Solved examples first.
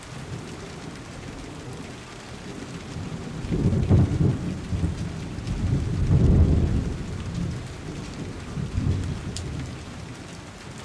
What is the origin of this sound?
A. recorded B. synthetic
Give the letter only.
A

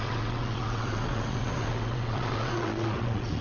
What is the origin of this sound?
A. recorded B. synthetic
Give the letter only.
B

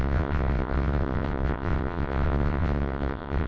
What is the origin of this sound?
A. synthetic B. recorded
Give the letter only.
A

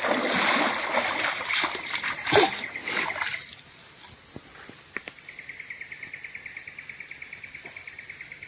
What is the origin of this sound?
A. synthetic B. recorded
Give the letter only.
B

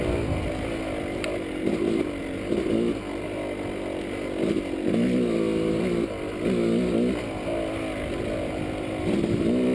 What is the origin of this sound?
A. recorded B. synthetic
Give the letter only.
A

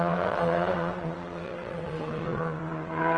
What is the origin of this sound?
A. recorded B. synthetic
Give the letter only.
B